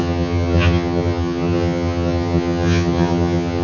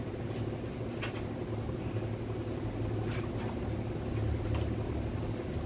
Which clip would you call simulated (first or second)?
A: first